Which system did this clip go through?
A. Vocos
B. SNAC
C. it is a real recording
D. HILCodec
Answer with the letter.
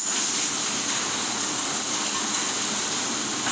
C